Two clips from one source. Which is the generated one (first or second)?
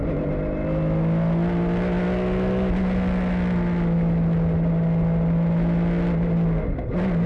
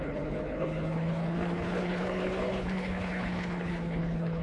second